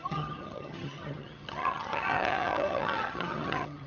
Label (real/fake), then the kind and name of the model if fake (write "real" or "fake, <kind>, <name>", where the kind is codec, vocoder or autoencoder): fake, vocoder, HiFi-GAN